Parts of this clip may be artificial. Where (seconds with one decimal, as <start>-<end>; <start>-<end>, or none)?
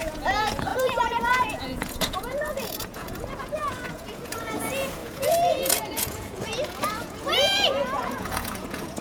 0.0-9.0